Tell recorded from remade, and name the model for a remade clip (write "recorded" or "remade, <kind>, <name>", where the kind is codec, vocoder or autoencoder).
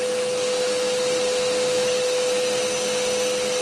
recorded